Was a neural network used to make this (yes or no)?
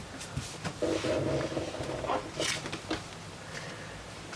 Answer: no